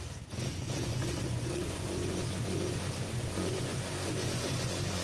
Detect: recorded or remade remade